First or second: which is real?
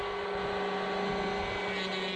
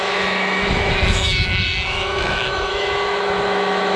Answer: first